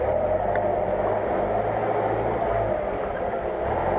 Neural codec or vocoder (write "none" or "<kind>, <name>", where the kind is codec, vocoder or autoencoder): none